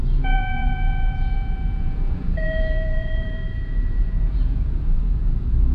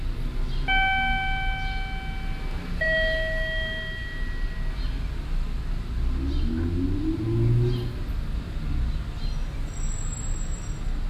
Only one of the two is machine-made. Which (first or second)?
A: first